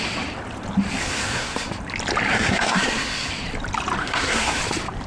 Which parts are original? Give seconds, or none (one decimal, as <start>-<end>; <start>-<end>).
0.0-1.0; 1.7-2.3; 3.3-4.0; 4.6-5.1